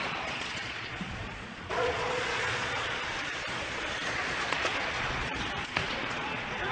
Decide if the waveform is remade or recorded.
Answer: remade